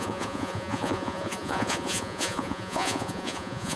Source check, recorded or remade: remade